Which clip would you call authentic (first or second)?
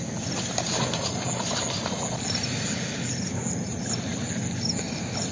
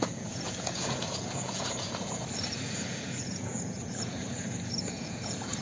first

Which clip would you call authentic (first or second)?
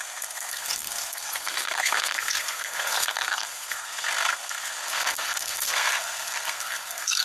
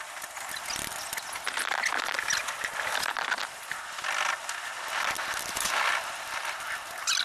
second